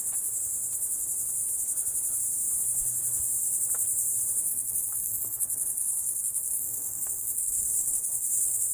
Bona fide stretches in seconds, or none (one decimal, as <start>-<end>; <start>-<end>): 0.0-4.5